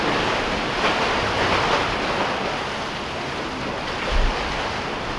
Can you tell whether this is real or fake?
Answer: real